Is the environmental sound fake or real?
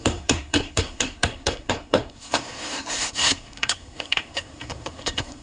fake